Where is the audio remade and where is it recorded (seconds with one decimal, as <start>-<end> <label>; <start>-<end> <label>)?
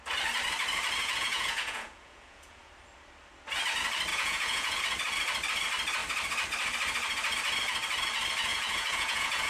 0.0-1.0 recorded; 1.0-2.7 remade; 2.7-4.1 recorded; 4.1-4.8 remade; 4.8-8.5 recorded; 8.5-9.5 remade